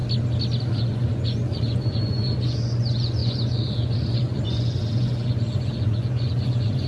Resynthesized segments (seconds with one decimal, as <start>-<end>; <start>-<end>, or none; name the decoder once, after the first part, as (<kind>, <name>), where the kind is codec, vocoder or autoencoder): 0.6-6.9 (vocoder, Vocos)